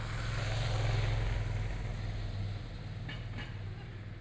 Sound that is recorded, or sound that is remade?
recorded